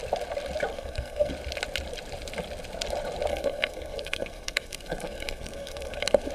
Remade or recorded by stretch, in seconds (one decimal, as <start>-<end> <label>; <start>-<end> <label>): 0.0-0.7 recorded; 0.7-1.3 remade; 1.3-3.3 recorded; 3.3-6.3 remade